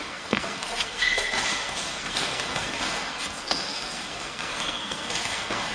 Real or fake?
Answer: fake